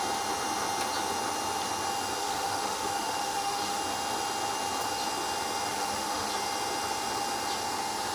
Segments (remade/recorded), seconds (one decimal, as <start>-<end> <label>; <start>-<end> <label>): 0.0-2.2 recorded; 2.2-3.8 remade; 3.8-5.7 recorded; 5.7-6.3 remade; 6.3-8.1 recorded